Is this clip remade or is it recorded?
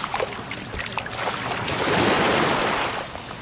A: recorded